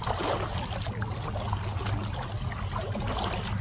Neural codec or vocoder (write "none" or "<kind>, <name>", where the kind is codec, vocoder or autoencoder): none